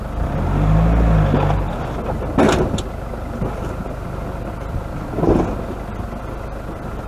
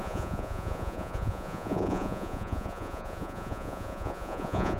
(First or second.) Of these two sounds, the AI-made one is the second